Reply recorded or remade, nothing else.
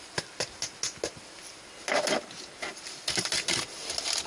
recorded